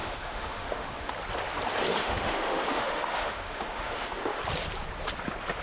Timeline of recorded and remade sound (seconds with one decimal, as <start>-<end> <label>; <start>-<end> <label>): 0.0-1.1 remade; 1.1-2.0 recorded; 2.0-4.4 remade; 4.4-5.6 recorded